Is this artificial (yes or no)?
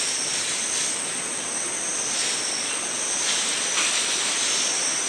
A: no